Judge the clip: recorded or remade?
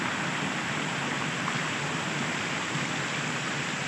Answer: recorded